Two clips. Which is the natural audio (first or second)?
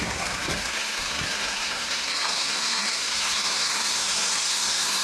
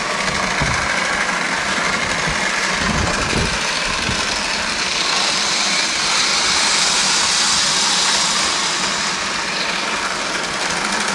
second